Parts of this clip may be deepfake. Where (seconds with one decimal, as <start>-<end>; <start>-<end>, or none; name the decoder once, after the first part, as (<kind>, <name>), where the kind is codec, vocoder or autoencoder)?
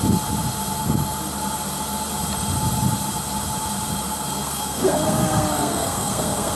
4.3-6.6 (codec, SNAC)